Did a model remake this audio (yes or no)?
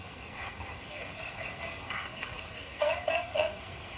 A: yes